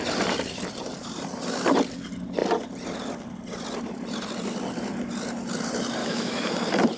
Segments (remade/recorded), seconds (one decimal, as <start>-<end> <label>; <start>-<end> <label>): 0.0-6.0 recorded; 6.0-6.5 remade; 6.5-7.0 recorded